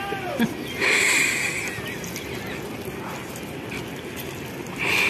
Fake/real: real